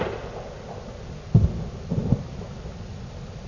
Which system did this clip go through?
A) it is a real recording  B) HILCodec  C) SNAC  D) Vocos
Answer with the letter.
A